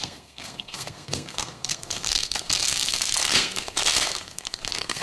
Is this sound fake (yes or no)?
yes